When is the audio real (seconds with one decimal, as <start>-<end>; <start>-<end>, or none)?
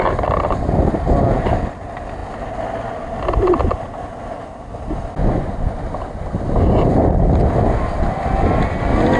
0.0-5.2; 5.8-9.2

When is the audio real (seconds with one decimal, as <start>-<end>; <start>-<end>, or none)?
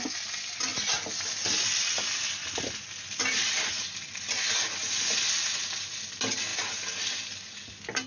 0.0-8.1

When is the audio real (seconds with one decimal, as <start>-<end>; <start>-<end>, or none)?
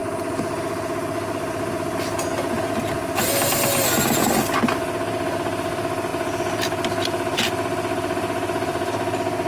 0.0-9.5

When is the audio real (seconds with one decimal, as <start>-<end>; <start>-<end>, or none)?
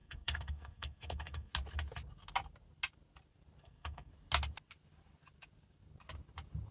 1.5-3.6; 4.1-6.7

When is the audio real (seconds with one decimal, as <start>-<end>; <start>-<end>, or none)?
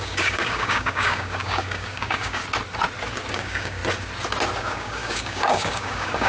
2.4-3.3; 3.8-4.6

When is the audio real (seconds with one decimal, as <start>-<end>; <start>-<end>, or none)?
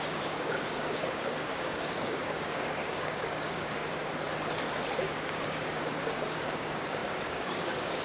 3.8-5.0